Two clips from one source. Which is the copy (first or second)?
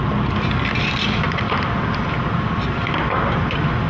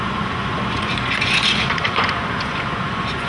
second